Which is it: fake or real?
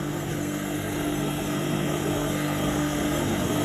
fake